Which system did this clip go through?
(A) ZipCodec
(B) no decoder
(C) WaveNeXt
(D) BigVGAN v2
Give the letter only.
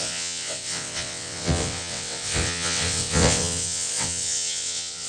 C